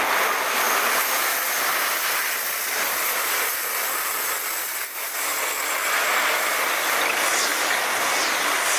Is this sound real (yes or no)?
yes